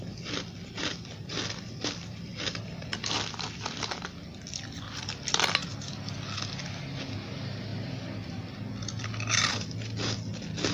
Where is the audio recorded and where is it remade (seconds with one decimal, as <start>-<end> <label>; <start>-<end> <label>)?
0.0-10.7 recorded